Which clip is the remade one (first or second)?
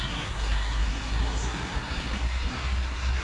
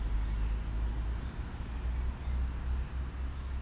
first